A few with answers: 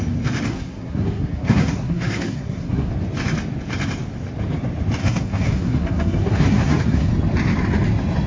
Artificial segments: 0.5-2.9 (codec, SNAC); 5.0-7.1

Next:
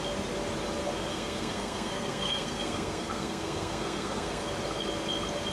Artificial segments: 1.1-4.4 (codec, SNAC)

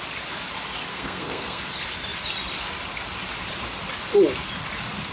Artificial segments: 0.9-1.6 (codec, SNAC)

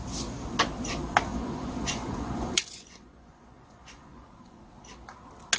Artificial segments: 1.3-4.7 (vocoder, Vocos)

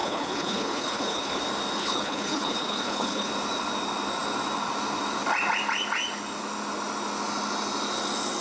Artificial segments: 0.0-1.4 (codec, HILCodec); 1.8-3.3

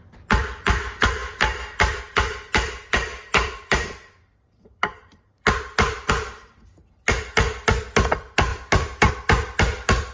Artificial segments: 3.1-6.1 (vocoder, BigVGAN v2); 8.5-9.1

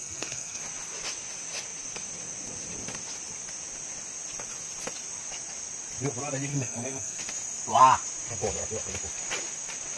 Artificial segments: 0.0-0.6 (codec, SNAC); 6.5-7.2

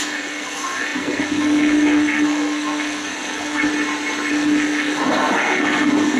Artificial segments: 0.0-3.7 (codec, SNAC); 4.3-6.2